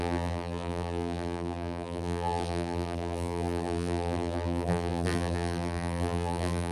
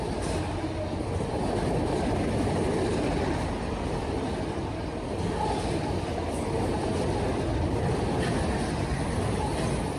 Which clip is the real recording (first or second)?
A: second